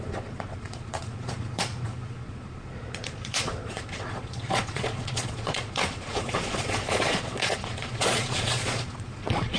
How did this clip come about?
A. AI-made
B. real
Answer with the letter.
A